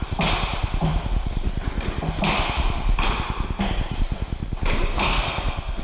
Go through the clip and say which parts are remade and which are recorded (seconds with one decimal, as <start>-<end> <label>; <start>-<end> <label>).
0.0-4.9 recorded; 4.9-5.8 remade